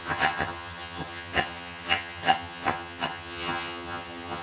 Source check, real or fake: fake